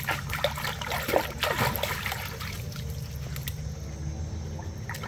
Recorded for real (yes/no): yes